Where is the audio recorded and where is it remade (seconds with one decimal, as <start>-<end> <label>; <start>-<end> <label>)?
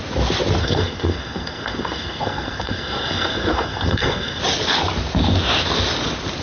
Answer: 0.0-0.6 recorded; 0.6-4.4 remade; 4.4-6.4 recorded